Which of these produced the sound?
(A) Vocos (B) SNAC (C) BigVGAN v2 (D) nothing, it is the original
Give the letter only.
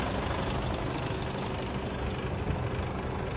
D